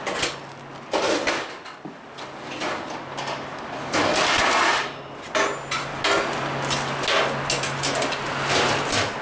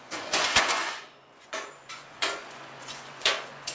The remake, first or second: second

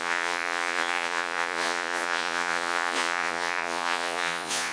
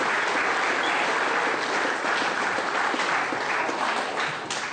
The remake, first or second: first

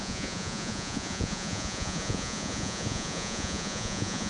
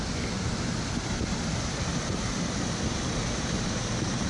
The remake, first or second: first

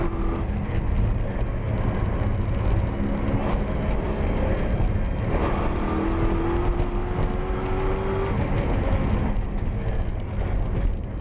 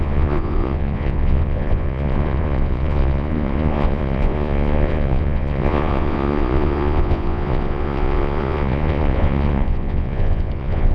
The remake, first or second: second